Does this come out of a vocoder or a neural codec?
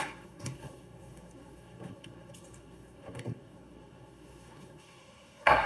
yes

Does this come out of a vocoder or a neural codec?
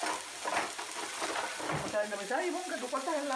no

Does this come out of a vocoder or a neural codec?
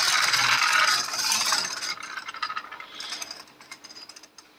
yes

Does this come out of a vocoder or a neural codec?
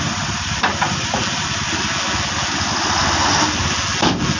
no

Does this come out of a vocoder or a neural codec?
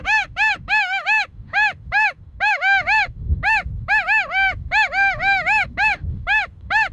yes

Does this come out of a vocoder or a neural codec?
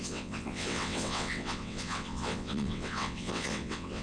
yes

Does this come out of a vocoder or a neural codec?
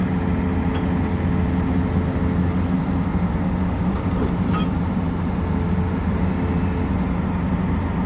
no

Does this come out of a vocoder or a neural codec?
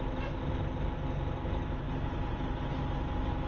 no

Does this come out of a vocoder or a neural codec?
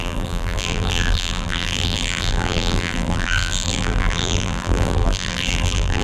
yes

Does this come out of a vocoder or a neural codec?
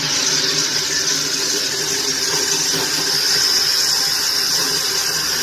yes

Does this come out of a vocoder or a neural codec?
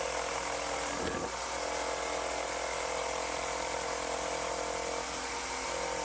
no